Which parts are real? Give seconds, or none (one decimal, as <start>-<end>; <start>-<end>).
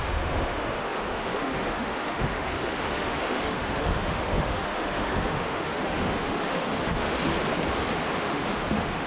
7.3-8.2